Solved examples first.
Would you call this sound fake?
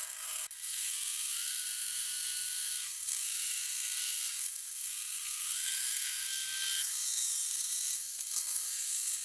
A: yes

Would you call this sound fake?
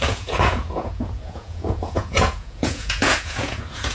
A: yes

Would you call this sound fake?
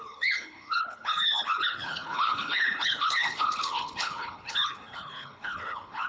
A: yes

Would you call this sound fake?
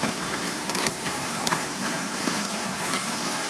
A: yes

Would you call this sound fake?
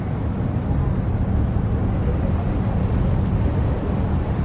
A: no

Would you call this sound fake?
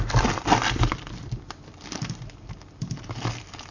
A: yes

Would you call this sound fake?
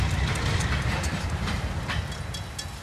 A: no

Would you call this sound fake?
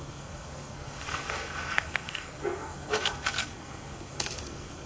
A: yes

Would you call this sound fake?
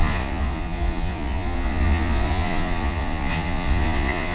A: yes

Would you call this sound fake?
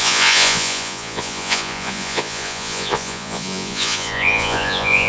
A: yes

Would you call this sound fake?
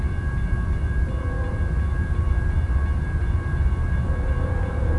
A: yes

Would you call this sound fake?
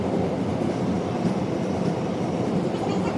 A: no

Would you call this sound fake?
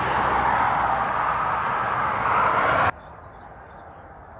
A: no